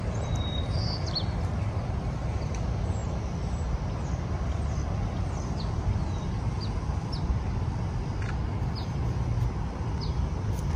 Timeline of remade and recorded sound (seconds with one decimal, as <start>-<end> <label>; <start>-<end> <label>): 0.0-10.8 recorded